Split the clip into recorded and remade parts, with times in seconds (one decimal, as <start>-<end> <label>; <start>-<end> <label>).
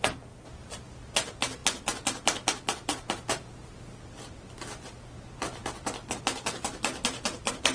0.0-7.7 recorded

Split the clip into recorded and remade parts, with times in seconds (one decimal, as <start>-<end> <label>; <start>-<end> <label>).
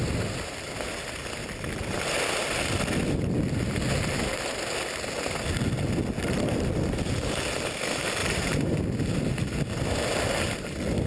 0.0-8.2 recorded; 8.2-8.8 remade; 8.8-11.1 recorded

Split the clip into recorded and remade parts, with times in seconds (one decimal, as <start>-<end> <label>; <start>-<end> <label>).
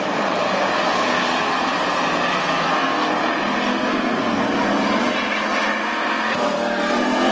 0.0-2.4 recorded; 2.4-3.1 remade; 3.1-3.7 recorded; 3.7-4.4 remade; 4.4-5.8 recorded; 5.8-7.3 remade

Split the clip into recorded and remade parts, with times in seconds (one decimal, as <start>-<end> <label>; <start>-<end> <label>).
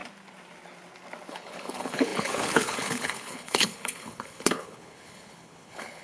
0.0-1.3 recorded; 1.3-6.0 remade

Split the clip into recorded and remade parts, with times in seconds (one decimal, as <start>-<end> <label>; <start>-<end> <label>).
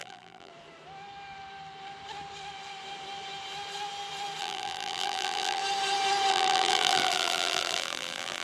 0.0-0.5 remade; 0.5-4.4 recorded; 4.4-5.6 remade; 5.6-6.3 recorded; 6.3-8.4 remade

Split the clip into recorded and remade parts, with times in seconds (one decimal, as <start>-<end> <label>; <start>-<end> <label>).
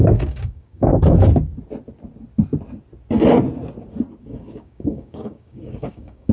0.0-0.9 remade; 0.9-4.2 recorded; 4.2-6.3 remade